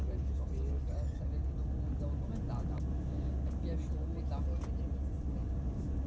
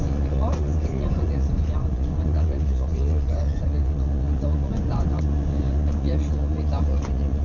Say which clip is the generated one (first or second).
second